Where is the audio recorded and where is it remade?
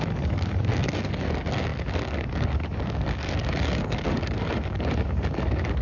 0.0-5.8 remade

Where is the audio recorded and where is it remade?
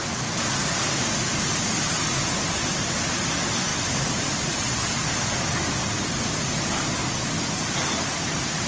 0.0-8.7 recorded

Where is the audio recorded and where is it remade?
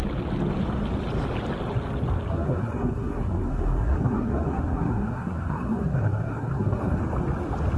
0.0-2.3 recorded; 2.3-7.0 remade; 7.0-7.8 recorded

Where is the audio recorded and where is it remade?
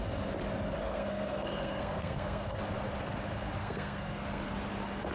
0.0-0.8 recorded; 0.8-2.6 remade; 2.6-3.6 recorded; 3.6-4.5 remade; 4.5-5.1 recorded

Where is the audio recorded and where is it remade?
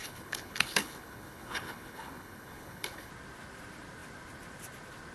0.0-3.1 remade; 3.1-5.1 recorded